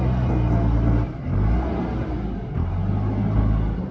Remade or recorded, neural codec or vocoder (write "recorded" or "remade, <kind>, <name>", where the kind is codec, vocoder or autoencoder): recorded